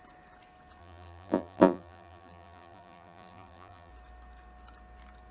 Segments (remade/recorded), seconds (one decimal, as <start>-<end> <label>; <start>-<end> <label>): 0.0-0.8 recorded; 0.8-3.9 remade; 3.9-5.3 recorded